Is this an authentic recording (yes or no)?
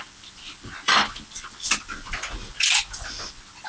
no